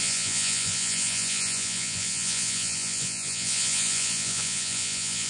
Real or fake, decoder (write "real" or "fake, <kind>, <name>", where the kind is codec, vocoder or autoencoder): fake, vocoder, Vocos